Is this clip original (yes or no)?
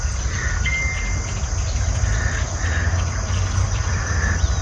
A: yes